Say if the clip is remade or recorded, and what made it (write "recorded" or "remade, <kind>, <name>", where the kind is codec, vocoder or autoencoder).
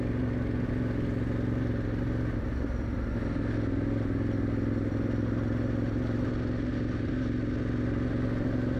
recorded